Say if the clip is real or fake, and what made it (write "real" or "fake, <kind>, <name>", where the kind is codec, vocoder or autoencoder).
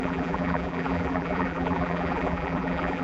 fake, vocoder, BigVGAN v2